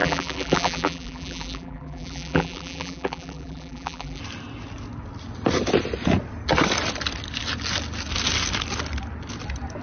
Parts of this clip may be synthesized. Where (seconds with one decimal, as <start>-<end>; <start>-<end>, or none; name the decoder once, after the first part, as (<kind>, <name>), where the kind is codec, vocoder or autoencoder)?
0.0-4.2 (vocoder, BigVGAN v2)